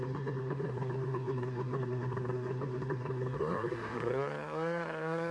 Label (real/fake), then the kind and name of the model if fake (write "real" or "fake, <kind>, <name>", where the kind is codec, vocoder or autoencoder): fake, codec, SNAC